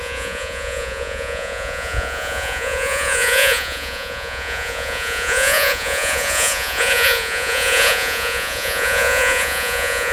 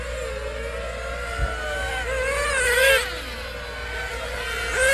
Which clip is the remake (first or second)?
first